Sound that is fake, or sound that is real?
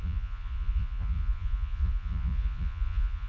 fake